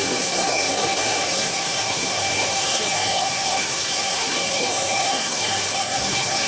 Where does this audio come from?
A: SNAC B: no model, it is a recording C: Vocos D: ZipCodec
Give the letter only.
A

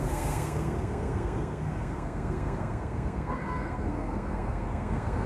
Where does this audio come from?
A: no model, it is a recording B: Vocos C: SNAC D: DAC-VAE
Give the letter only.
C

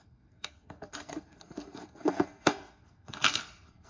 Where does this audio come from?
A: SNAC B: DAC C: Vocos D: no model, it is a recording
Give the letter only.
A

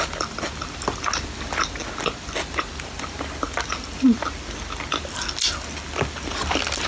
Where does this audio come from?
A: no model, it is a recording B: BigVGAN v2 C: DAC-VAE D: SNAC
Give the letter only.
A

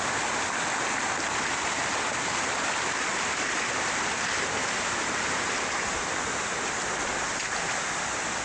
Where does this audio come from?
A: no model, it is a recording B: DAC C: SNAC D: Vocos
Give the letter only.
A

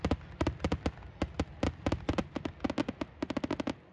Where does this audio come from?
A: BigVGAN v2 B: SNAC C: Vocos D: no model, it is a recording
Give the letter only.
D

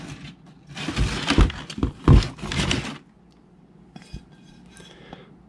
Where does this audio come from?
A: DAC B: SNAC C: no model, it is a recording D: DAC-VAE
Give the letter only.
C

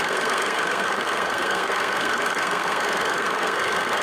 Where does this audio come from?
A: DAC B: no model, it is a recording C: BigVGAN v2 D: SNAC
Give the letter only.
D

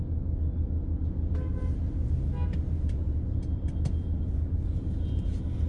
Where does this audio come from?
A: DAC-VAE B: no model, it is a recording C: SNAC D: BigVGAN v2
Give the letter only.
B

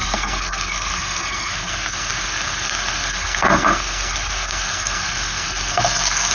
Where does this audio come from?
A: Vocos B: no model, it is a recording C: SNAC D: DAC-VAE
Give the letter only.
C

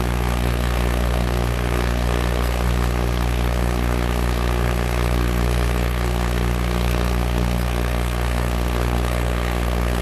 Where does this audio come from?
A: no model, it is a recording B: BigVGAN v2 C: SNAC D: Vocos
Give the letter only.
C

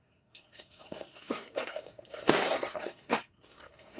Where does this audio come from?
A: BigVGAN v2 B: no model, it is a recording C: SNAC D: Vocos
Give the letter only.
C